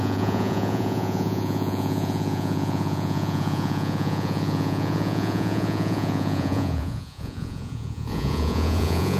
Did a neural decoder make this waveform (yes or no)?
yes